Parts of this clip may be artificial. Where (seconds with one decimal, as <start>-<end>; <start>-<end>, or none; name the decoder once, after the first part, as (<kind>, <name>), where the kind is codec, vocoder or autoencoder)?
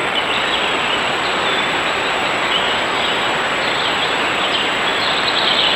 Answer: 0.0-1.1 (vocoder, BigVGAN v2); 4.9-5.8